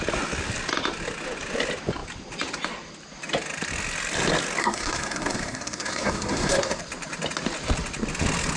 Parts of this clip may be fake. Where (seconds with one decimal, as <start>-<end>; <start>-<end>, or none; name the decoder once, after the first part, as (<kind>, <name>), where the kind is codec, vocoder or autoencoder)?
4.6-6.8 (codec, SNAC)